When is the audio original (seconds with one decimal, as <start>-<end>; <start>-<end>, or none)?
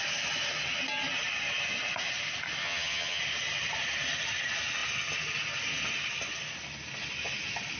0.0-2.6; 3.2-7.8